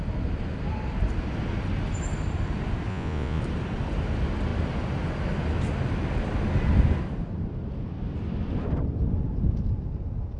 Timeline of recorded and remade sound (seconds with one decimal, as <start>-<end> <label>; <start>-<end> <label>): 0.0-2.9 recorded; 2.9-3.4 remade; 3.4-10.4 recorded